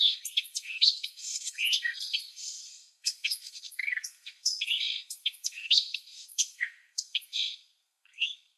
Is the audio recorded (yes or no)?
no